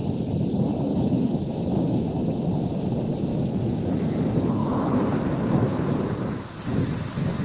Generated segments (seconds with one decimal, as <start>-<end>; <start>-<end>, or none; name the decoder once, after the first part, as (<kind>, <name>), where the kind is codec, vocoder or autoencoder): 0.9-2.2 (autoencoder, DAC-VAE); 3.3-4.0; 4.6-5.9

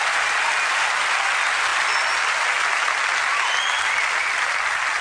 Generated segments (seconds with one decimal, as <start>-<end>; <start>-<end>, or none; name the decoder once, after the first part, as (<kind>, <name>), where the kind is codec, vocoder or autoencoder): none

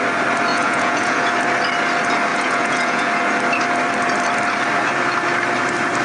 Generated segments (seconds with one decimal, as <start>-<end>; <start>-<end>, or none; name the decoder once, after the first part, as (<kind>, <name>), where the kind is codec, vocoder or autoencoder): 0.5-1.3 (vocoder, Vocos); 2.3-3.1